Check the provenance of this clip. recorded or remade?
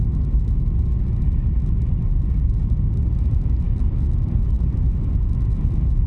recorded